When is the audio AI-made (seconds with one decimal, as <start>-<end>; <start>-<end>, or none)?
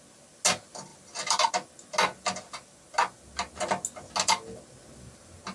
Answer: none